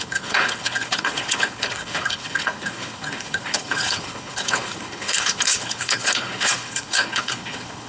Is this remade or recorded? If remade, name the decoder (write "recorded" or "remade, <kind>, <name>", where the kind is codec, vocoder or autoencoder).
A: remade, codec, HILCodec